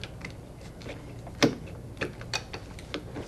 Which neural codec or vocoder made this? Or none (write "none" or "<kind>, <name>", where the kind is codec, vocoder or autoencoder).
none